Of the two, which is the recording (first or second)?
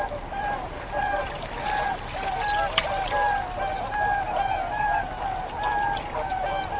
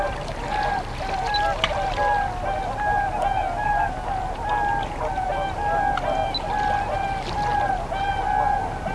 second